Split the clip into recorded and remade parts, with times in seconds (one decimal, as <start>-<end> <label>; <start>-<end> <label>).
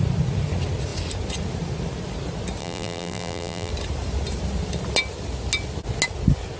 0.0-2.6 recorded; 2.6-3.7 remade; 3.7-6.6 recorded